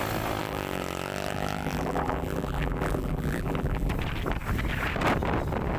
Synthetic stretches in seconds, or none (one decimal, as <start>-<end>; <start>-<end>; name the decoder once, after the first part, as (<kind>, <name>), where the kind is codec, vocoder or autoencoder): 0.4-3.9 (vocoder, BigVGAN v2)